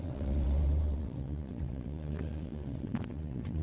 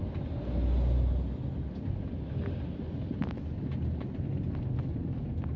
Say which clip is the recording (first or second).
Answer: second